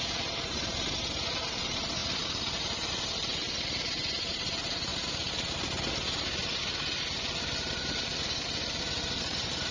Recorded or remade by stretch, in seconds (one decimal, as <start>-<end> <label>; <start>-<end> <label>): 0.0-0.7 remade; 0.7-1.5 recorded; 1.5-4.9 remade; 4.9-9.2 recorded; 9.2-9.7 remade